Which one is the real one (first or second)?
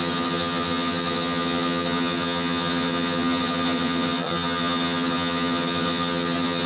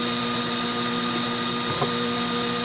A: second